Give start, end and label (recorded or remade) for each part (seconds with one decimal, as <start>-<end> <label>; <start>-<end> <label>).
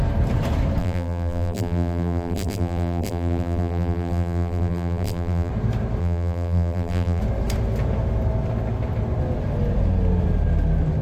0.0-0.8 recorded; 0.8-5.5 remade; 5.5-6.0 recorded; 6.0-7.2 remade; 7.2-11.0 recorded